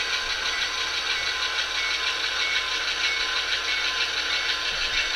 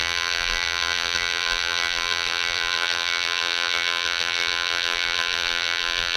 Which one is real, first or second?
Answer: first